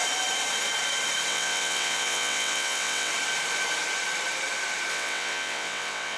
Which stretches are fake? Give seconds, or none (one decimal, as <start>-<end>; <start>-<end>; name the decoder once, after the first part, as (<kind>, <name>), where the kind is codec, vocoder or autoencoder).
1.3-3.1 (vocoder, WaveNeXt); 4.9-6.2